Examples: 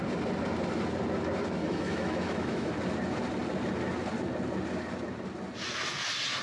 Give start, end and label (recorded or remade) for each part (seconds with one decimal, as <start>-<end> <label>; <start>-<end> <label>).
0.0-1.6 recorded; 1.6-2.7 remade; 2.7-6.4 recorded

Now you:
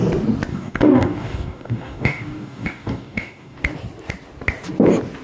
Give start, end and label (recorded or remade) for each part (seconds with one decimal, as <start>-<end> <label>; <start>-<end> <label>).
0.0-0.5 recorded; 0.5-3.6 remade; 3.6-5.2 recorded

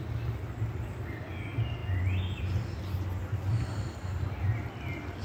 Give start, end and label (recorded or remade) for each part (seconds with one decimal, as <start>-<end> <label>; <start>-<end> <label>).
0.0-5.2 recorded

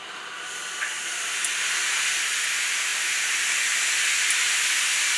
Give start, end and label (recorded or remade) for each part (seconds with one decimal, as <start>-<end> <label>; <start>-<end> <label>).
0.0-5.2 recorded

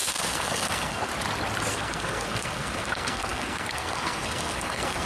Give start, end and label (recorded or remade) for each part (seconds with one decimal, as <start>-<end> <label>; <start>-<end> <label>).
0.0-1.1 remade; 1.1-1.7 recorded; 1.7-5.1 remade